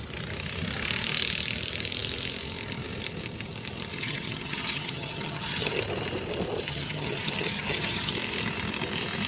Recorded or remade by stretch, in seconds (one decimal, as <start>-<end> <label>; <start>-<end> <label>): 0.0-3.9 recorded; 3.9-5.8 remade; 5.8-6.7 recorded; 6.7-8.1 remade; 8.1-9.3 recorded